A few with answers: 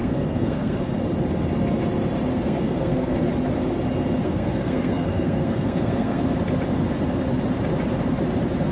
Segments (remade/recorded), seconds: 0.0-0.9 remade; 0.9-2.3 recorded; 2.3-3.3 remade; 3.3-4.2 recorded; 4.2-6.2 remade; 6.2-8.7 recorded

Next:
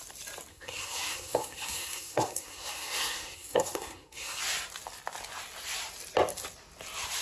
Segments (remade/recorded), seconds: 0.0-0.5 recorded; 0.5-4.4 remade; 4.4-7.2 recorded

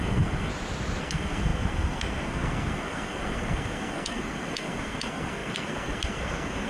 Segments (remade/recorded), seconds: 0.0-0.5 remade; 0.5-1.0 recorded; 1.0-6.7 remade

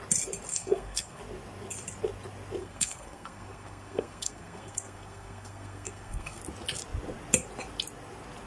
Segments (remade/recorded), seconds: 0.0-0.5 recorded; 0.5-1.2 remade; 1.2-2.6 recorded; 2.6-6.4 remade; 6.4-8.5 recorded

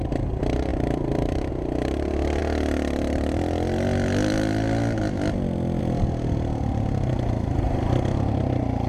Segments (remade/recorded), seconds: 0.0-8.9 recorded

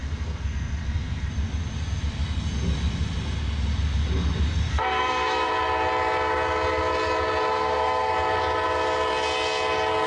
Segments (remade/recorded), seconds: 0.0-1.3 remade; 1.3-4.7 recorded; 4.7-5.5 remade; 5.5-7.5 recorded; 7.5-8.1 remade; 8.1-10.1 recorded

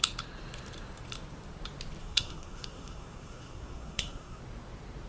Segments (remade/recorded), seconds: 0.0-2.0 recorded; 2.0-4.4 remade; 4.4-5.1 recorded

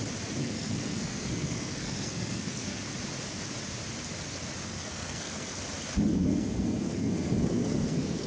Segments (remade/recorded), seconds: 0.0-0.4 recorded; 0.4-2.8 remade; 2.8-4.7 recorded; 4.7-5.5 remade; 5.5-6.1 recorded; 6.1-8.3 remade